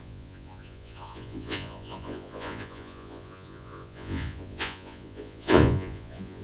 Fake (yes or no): yes